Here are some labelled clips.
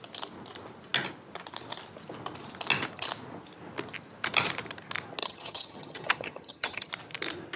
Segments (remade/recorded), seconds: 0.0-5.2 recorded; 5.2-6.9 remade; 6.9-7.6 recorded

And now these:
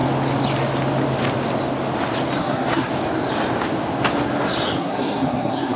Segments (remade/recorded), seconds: 0.0-2.4 recorded; 2.4-2.9 remade; 2.9-4.8 recorded; 4.8-5.8 remade

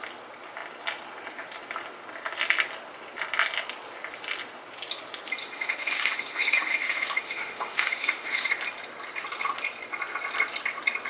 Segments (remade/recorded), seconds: 0.0-5.4 recorded; 5.4-8.5 remade; 8.5-11.1 recorded